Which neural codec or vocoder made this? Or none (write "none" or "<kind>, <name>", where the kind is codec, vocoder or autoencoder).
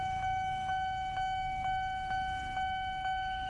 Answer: autoencoder, DAC-VAE